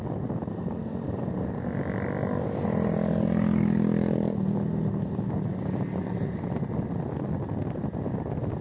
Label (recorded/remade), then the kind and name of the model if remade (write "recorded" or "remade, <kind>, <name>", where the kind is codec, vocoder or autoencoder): recorded